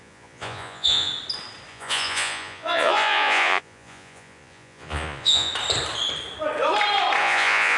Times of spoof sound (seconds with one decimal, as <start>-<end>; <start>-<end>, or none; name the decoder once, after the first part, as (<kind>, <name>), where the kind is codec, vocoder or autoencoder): 0.0-1.1 (vocoder, Vocos); 1.7-5.5; 7.2-7.8